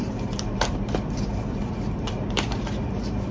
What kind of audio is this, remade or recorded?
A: remade